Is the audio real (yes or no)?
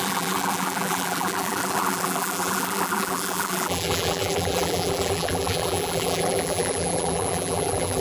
no